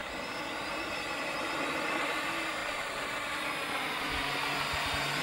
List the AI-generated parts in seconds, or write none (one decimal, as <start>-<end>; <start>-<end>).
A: 0.7-5.2